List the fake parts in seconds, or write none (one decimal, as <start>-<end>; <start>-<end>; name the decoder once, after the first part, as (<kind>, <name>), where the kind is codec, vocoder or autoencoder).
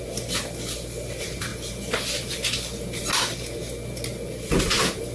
none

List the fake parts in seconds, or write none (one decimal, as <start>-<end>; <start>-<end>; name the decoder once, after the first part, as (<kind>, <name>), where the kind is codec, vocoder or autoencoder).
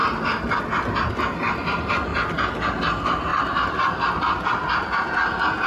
none